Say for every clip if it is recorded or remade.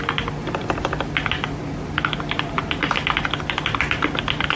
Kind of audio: recorded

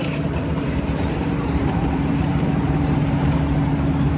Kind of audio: remade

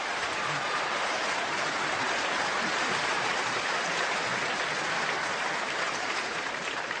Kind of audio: remade